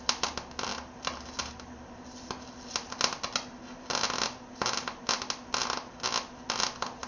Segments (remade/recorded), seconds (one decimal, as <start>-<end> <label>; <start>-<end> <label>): 0.0-7.1 recorded